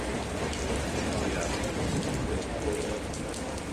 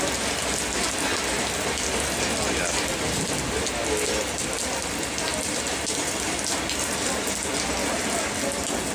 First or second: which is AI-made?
first